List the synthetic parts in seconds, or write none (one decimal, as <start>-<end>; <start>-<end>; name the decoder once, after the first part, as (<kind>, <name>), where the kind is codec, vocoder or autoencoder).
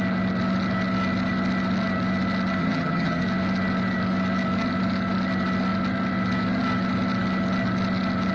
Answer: 2.6-3.2 (vocoder, HiFi-GAN)